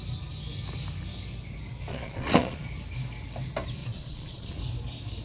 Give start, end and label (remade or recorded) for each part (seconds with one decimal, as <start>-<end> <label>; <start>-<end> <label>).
0.0-1.9 recorded; 1.9-2.6 remade; 2.6-3.8 recorded; 3.8-4.5 remade; 4.5-5.2 recorded